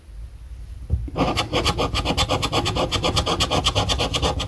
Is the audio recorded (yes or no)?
yes